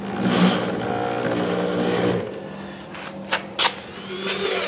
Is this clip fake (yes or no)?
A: no